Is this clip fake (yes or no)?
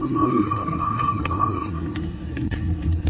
yes